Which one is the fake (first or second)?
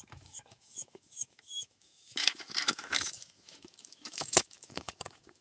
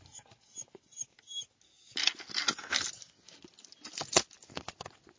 first